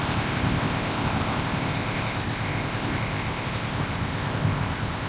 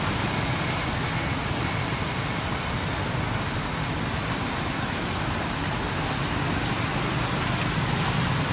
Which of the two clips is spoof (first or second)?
first